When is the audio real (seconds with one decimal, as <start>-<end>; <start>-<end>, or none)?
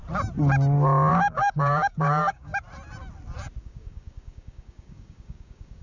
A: 0.0-1.1; 2.5-3.6